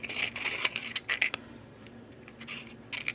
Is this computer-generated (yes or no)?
no